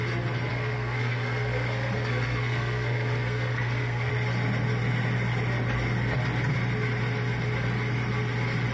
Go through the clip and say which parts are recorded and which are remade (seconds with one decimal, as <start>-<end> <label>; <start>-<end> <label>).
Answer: 0.0-0.5 recorded; 0.5-4.1 remade; 4.1-8.7 recorded